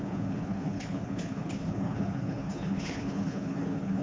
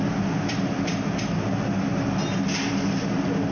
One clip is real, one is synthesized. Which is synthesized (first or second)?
first